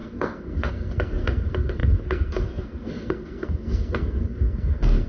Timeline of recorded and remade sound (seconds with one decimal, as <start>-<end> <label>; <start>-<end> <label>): 0.0-5.1 remade